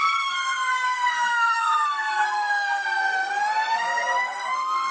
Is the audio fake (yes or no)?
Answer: yes